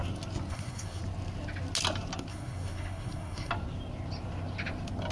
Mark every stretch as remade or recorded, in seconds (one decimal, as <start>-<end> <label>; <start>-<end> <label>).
0.0-0.5 recorded; 0.5-1.0 remade; 1.0-2.3 recorded; 2.3-3.5 remade; 3.5-5.1 recorded